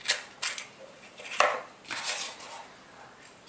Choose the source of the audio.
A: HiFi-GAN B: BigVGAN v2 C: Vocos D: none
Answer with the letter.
D